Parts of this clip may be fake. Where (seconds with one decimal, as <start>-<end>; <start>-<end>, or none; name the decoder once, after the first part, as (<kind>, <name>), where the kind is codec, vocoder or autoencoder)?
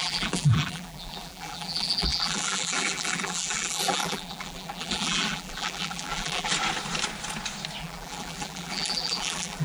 0.0-6.5 (vocoder, BigVGAN v2); 7.8-9.6